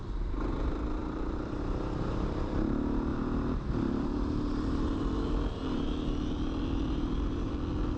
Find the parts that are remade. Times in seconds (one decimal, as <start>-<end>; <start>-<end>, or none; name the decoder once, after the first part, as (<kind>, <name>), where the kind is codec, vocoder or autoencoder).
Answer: 1.0-1.6 (vocoder, BigVGAN v2); 3.1-7.5

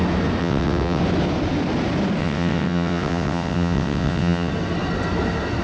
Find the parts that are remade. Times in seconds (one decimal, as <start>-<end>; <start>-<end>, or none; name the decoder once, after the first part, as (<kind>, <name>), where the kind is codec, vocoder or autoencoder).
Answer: 0.4-1.0 (vocoder, WaveNeXt); 2.2-4.5